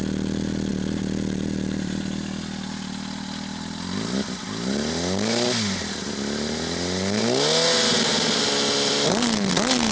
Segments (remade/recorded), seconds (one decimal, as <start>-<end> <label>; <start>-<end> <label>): 0.0-9.9 recorded